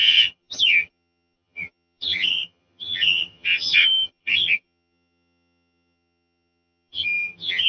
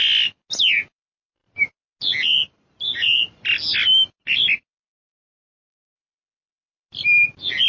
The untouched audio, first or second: second